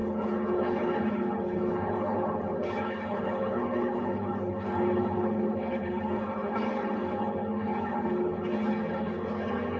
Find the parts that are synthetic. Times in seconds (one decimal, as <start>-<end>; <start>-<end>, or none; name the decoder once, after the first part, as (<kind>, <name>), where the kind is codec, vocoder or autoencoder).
0.0-9.8 (codec, HILCodec)